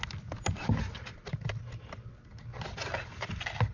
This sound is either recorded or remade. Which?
recorded